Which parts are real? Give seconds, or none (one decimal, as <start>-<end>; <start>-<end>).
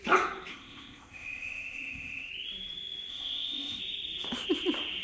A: 0.0-0.5; 2.3-3.1; 3.8-5.0